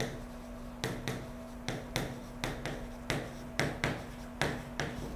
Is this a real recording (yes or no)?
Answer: yes